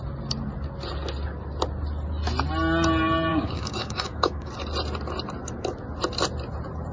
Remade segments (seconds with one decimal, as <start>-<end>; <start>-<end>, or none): 3.3-4.5